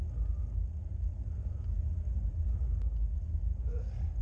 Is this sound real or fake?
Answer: real